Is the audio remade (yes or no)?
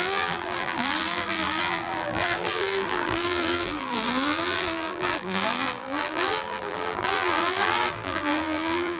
yes